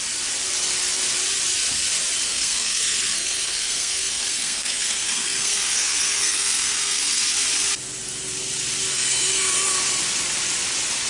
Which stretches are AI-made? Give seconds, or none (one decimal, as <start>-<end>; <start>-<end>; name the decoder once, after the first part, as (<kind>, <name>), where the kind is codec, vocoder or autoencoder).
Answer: 2.3-7.2 (codec, SNAC); 8.9-9.5